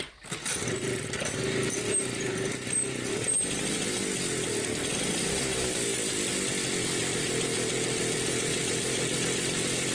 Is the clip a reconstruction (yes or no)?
yes